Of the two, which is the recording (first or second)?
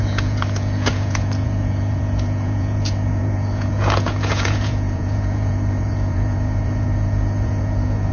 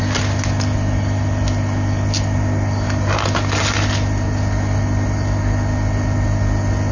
second